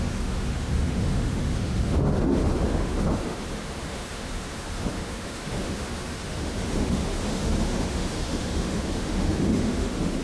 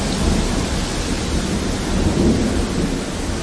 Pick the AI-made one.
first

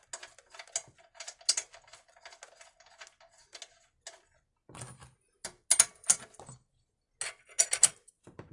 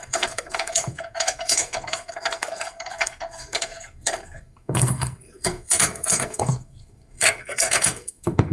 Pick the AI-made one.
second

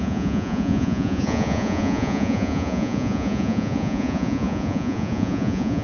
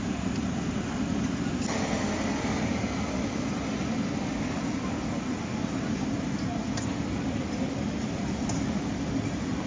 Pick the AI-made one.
first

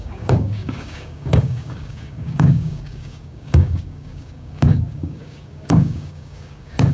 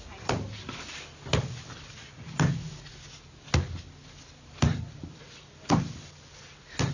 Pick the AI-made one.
first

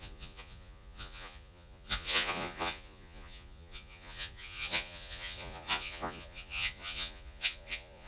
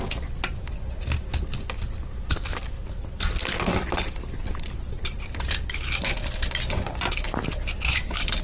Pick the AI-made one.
first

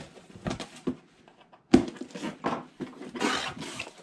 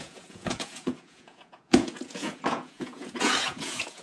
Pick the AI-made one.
second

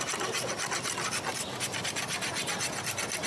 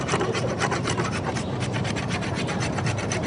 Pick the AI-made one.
second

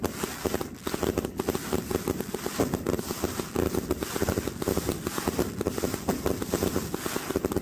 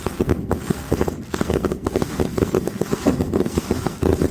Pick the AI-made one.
second